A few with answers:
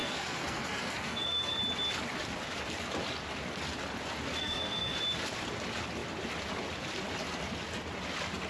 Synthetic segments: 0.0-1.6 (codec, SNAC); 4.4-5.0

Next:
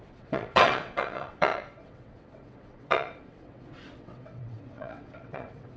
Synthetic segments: 0.0-5.8 (vocoder, WaveNeXt)